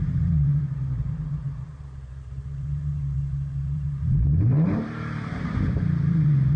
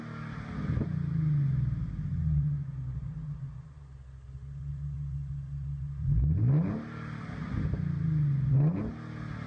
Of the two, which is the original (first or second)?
second